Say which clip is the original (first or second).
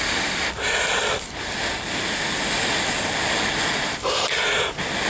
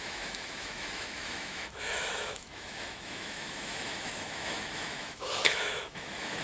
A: first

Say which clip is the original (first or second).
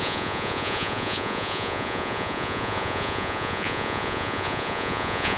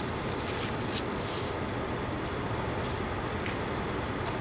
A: second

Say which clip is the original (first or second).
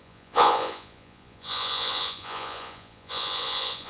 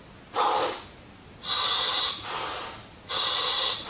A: second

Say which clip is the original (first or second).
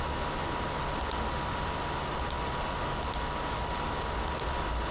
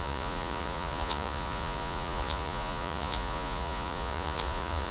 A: first